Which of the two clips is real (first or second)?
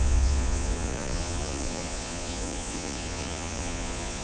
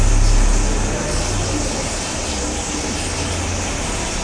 second